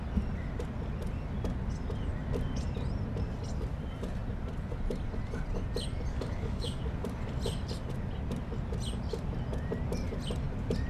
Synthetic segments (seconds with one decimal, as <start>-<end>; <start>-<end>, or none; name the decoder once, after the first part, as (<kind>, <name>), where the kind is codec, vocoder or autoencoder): 6.1-6.8 (codec, DAC)